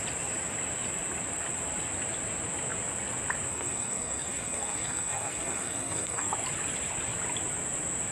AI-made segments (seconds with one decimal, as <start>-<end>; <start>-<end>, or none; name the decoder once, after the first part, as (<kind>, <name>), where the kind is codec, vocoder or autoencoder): 3.5-6.3 (codec, SNAC)